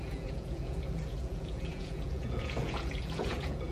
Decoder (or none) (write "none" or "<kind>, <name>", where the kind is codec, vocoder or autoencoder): vocoder, Vocos